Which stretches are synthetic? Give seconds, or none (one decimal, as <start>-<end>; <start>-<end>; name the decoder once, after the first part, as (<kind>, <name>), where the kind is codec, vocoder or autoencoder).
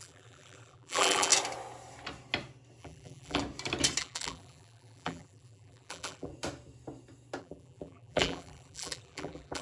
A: 0.0-1.3 (vocoder, BigVGAN v2); 2.8-3.4; 4.0-6.3; 7.4-9.6